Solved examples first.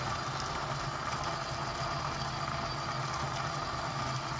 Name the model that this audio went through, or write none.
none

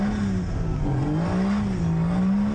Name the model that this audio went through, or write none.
none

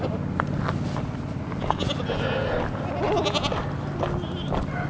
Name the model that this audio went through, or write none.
none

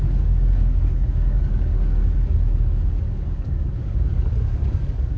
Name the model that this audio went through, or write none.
codec, DAC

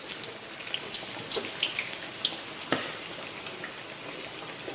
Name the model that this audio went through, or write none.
none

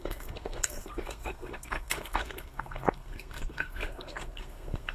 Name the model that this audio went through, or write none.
codec, SNAC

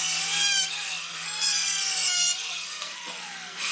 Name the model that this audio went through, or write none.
codec, SNAC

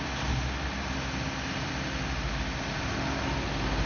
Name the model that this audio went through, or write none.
none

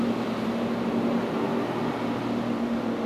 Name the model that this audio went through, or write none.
none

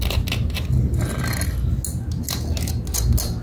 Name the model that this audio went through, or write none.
none